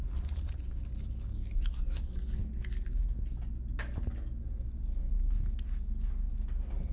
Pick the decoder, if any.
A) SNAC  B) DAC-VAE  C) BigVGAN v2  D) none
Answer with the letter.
D